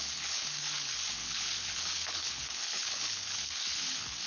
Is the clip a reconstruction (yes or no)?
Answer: yes